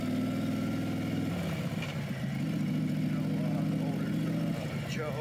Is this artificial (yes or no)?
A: no